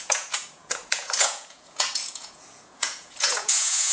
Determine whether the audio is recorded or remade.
remade